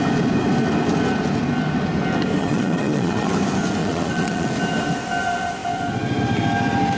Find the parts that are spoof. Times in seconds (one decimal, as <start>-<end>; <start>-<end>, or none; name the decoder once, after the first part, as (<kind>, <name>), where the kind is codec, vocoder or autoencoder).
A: 2.4-3.3 (vocoder, Vocos); 3.8-4.5